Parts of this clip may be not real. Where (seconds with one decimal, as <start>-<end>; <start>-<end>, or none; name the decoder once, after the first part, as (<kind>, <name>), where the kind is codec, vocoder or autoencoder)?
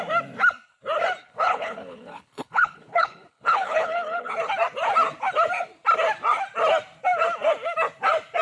1.2-4.3 (codec, HILCodec)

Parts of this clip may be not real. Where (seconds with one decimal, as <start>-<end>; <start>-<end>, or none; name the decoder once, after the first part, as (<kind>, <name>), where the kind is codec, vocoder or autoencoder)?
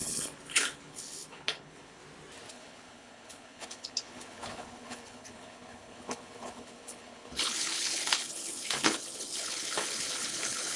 0.0-2.0 (codec, HILCodec); 2.5-10.8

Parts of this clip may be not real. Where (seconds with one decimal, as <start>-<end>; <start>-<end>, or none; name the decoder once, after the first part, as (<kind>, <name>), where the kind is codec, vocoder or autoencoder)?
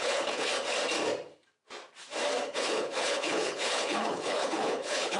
0.0-0.5 (codec, HILCodec); 2.4-5.2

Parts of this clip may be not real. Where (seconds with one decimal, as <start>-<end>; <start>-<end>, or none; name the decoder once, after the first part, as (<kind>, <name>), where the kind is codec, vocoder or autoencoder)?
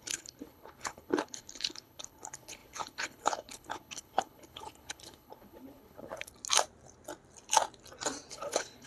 0.0-6.3 (codec, HILCodec); 8.3-8.9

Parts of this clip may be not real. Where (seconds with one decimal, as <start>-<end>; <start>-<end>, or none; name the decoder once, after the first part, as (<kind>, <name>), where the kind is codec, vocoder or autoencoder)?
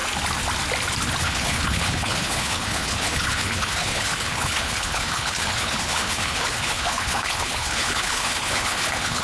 1.2-9.2 (codec, HILCodec)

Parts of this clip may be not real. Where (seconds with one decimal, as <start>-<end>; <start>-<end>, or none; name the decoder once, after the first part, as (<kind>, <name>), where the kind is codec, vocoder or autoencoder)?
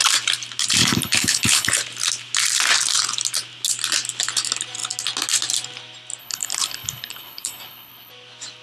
0.8-1.7 (codec, HILCodec); 6.2-8.1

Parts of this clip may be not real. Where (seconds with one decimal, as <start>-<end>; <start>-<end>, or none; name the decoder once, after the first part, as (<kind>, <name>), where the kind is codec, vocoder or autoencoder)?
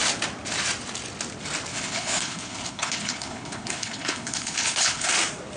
1.7-5.1 (codec, HILCodec)